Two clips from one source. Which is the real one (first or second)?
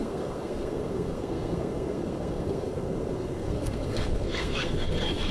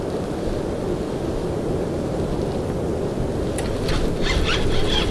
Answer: second